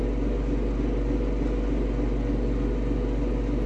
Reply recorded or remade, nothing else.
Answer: recorded